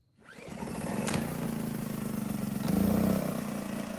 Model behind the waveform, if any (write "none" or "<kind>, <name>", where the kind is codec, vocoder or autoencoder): none